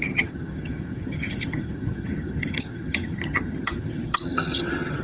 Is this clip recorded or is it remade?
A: remade